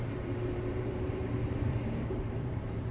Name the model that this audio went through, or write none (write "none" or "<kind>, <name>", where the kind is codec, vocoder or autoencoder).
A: vocoder, BigVGAN v2